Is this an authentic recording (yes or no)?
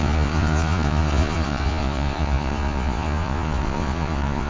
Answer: no